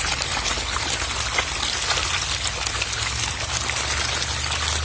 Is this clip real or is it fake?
real